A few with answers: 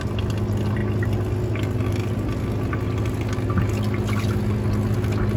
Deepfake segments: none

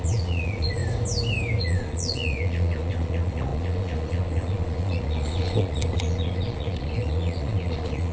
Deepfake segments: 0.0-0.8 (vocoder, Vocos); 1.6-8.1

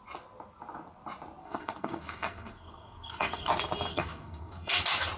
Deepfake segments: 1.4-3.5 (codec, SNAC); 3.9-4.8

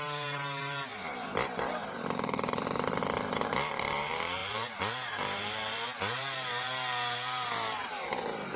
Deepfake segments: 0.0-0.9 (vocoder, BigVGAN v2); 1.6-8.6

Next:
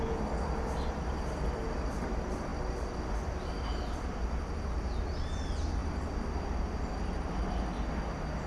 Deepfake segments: none